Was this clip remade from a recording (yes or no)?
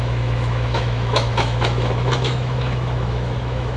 yes